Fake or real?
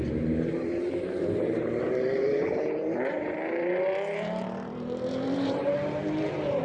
fake